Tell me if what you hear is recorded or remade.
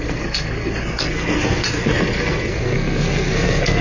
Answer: remade